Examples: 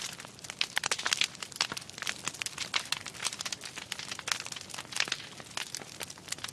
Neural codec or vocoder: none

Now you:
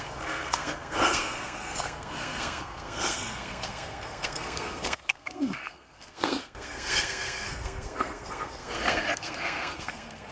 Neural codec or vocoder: codec, SNAC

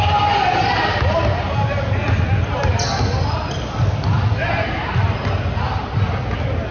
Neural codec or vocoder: none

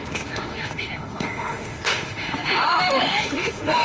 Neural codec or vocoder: autoencoder, DAC-VAE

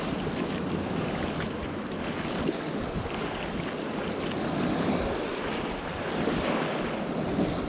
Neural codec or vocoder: none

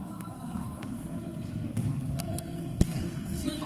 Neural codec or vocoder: codec, SNAC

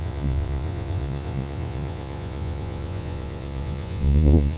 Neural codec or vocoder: vocoder, Vocos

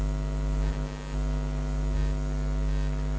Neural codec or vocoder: none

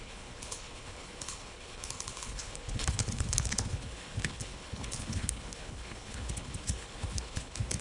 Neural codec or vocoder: codec, HILCodec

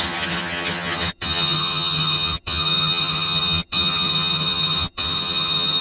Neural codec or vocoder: vocoder, HiFi-GAN